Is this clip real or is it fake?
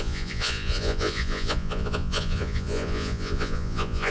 fake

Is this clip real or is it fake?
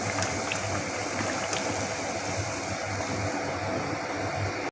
real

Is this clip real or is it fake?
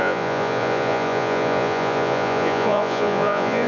fake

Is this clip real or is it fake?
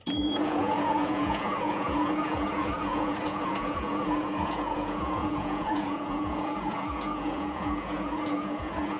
fake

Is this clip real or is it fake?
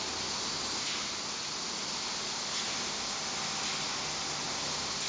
real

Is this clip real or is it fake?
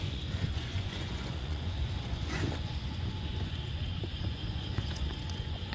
fake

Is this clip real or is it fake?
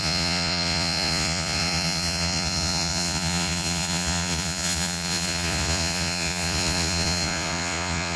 fake